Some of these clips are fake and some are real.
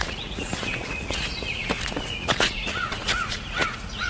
fake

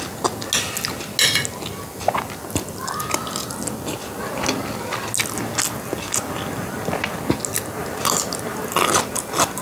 real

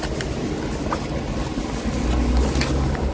real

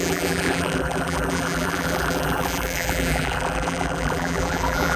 fake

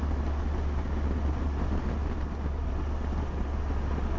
real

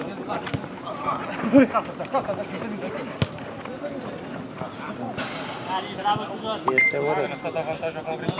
real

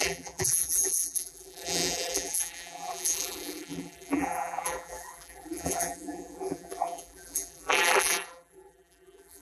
fake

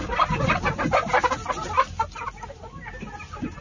real